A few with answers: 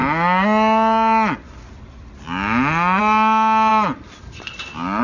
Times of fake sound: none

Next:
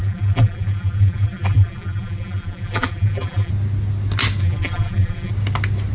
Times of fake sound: 0.0-3.5 (vocoder, BigVGAN v2); 4.4-5.3

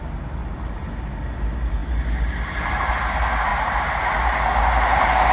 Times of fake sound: 0.4-0.9 (vocoder, BigVGAN v2); 3.5-4.0

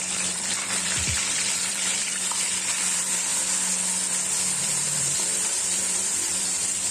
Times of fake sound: 0.0-3.3 (vocoder, BigVGAN v2); 4.6-6.9

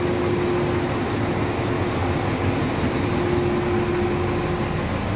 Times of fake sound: none